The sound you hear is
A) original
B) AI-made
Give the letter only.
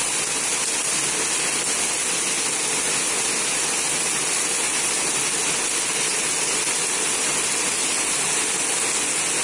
A